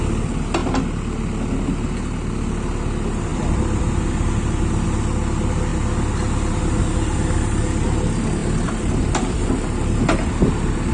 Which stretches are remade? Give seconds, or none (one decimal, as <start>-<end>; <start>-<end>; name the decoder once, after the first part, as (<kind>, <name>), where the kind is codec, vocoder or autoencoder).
3.3-3.8 (vocoder, BigVGAN v2); 8.4-9.6